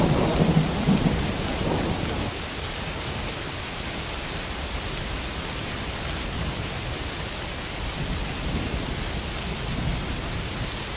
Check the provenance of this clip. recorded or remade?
recorded